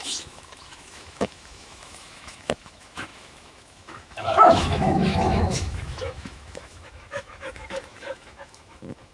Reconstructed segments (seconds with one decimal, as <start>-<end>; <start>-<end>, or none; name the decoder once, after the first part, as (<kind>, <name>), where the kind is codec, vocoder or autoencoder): 0.0-9.1 (autoencoder, DAC-VAE)